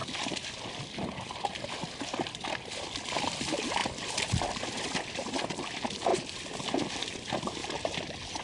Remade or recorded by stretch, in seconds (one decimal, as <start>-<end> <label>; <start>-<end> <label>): 0.0-8.4 recorded